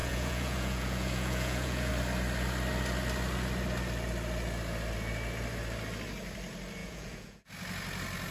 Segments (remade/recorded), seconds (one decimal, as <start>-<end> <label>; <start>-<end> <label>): 0.0-1.9 remade; 1.9-6.8 recorded; 6.8-7.5 remade; 7.5-8.3 recorded